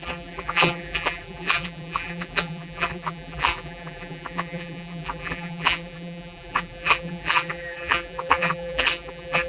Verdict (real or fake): fake